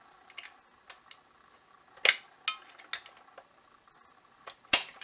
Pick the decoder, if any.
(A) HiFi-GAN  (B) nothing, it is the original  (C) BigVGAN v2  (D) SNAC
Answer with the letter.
B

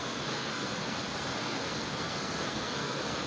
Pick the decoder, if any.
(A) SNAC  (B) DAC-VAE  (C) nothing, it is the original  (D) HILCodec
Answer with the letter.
A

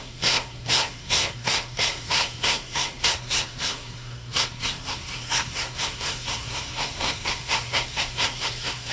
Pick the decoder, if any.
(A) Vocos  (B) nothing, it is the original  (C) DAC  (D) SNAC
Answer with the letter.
D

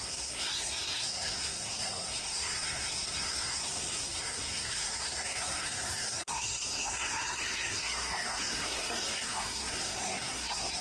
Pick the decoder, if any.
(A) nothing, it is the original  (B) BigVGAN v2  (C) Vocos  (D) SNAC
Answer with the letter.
D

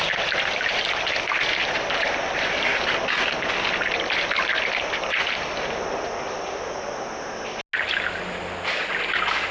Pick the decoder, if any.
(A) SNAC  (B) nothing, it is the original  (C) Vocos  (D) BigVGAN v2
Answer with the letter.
B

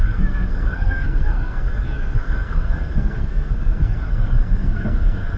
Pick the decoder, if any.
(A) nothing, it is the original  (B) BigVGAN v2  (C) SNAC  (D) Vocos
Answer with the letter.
C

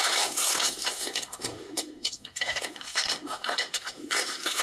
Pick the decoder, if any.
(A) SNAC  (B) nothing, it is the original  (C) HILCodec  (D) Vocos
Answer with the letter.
A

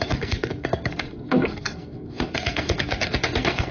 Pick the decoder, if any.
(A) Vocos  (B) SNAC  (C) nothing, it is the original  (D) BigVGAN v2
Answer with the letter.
B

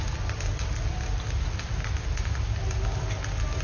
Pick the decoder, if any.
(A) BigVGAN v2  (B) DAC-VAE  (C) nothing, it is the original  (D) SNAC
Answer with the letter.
C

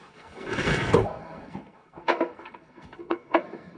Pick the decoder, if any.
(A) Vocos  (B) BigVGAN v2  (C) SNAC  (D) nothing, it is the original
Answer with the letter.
C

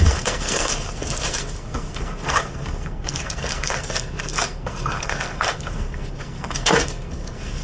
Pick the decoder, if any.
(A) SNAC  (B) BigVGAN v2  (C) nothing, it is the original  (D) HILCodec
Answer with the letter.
A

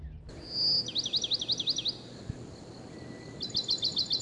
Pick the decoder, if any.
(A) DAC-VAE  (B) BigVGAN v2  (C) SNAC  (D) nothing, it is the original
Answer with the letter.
D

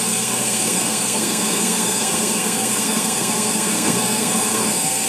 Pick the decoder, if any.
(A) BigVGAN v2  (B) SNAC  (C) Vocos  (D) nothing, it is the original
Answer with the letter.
B